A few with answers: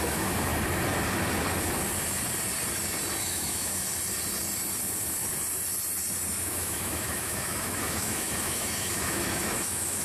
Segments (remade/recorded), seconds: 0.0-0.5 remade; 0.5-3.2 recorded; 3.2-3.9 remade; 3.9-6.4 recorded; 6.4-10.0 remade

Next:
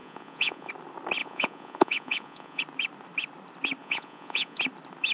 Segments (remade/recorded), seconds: 0.0-0.7 remade; 0.7-1.2 recorded; 1.2-2.6 remade; 2.6-3.8 recorded; 3.8-4.6 remade; 4.6-5.1 recorded

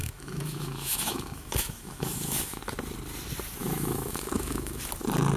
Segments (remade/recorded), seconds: 0.0-2.6 remade; 2.6-3.6 recorded; 3.6-4.8 remade; 4.8-5.4 recorded

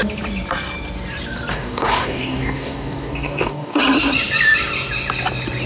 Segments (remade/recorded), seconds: 0.0-1.5 recorded; 1.5-3.8 remade; 3.8-5.7 recorded

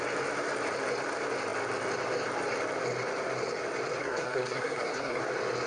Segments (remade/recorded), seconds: 0.0-4.0 recorded; 4.0-5.2 remade; 5.2-5.7 recorded

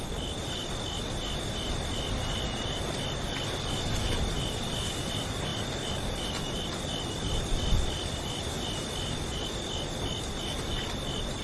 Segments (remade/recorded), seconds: 0.0-11.4 recorded

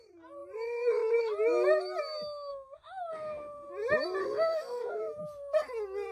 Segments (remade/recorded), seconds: 0.0-2.5 recorded; 2.5-3.7 remade; 3.7-4.2 recorded; 4.2-5.2 remade; 5.2-6.1 recorded

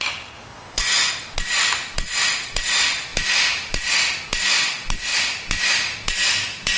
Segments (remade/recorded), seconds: 0.0-0.5 recorded; 0.5-1.1 remade; 1.1-6.8 recorded